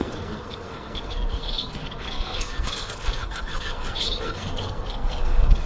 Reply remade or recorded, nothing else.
remade